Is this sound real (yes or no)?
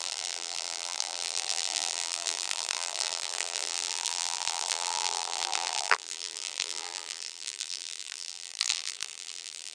no